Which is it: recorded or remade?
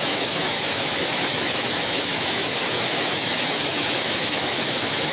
remade